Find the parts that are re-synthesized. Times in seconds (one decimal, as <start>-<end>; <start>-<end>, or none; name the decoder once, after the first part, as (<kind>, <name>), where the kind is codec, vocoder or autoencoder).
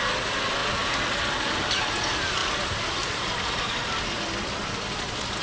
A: 2.4-5.0 (vocoder, BigVGAN v2)